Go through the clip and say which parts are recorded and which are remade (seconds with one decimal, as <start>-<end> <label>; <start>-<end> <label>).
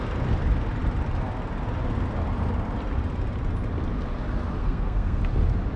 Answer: 0.0-4.6 recorded; 4.6-5.2 remade; 5.2-5.8 recorded